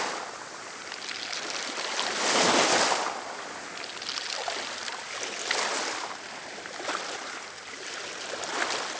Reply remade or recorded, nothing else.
recorded